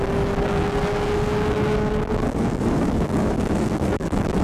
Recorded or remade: remade